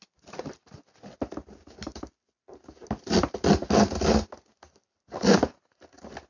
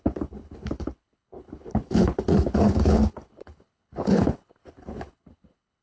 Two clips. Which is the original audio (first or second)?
first